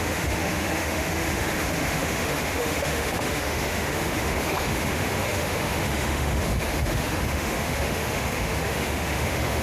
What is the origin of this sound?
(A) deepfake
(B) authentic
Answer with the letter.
A